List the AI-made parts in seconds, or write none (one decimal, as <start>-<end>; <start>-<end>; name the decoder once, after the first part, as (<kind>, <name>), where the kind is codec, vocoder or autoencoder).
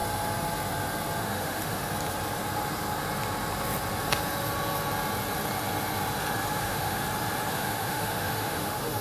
1.2-1.8 (autoencoder, DAC-VAE); 6.6-7.0; 7.5-9.0